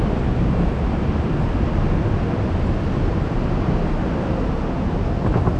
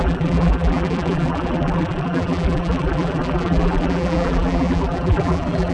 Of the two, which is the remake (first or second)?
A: second